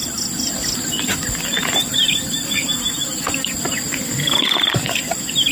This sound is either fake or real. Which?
real